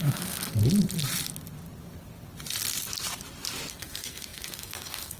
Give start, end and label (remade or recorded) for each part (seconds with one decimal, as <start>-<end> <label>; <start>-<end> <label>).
0.0-0.6 remade; 0.6-3.7 recorded; 3.7-5.2 remade